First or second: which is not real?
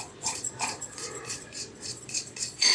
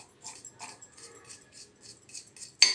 first